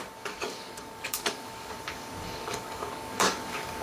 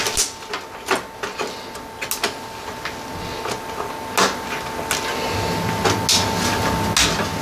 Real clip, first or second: second